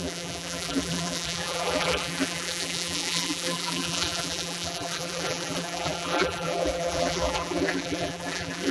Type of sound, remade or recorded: remade